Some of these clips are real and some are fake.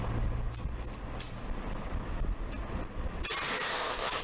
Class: real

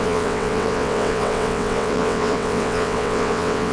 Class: fake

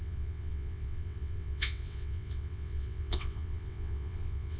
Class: fake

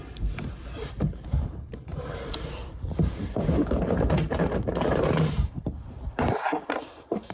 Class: fake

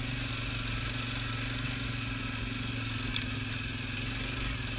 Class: real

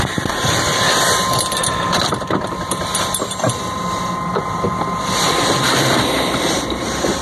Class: fake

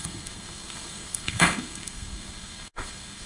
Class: fake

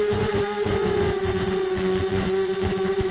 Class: fake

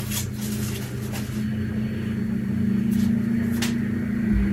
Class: real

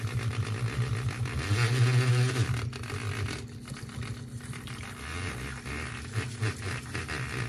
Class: real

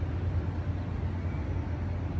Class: real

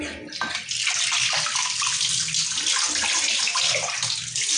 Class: real